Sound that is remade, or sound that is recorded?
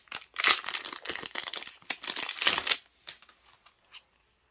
recorded